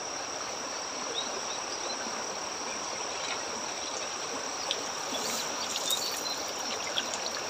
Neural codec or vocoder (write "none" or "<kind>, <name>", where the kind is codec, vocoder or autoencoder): vocoder, BigVGAN v2